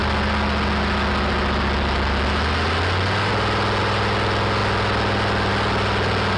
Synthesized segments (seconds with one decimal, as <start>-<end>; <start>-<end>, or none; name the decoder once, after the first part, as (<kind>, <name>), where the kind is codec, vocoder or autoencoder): none